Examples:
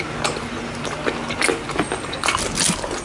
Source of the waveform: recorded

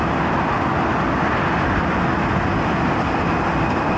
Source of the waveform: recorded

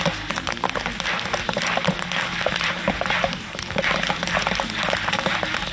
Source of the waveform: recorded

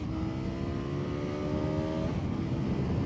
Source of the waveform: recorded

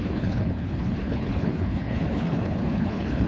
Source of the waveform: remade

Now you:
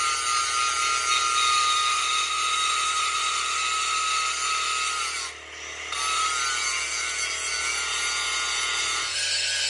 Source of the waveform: recorded